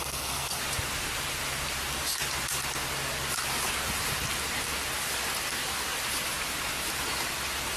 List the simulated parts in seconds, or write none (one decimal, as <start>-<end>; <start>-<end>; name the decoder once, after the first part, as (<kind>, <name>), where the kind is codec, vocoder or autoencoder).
0.0-0.6 (codec, SNAC)